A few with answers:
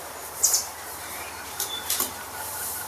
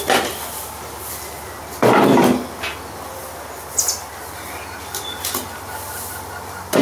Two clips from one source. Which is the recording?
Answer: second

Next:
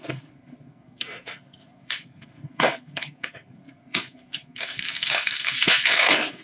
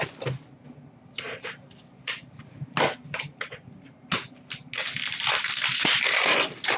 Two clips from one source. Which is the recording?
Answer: second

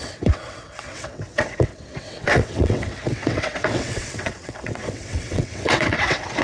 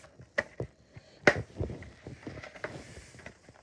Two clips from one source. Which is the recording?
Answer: second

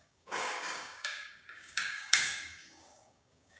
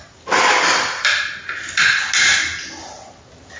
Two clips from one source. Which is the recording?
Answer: second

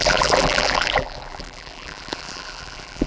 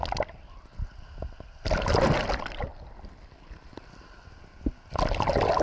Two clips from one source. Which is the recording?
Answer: second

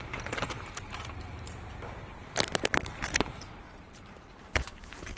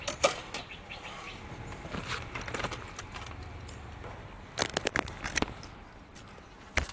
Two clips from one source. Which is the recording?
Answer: second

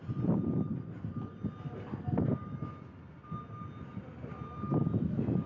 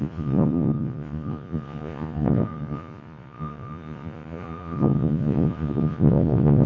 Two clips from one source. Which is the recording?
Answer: first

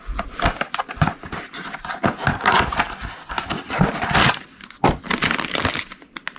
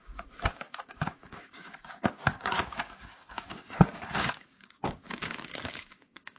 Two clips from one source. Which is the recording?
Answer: first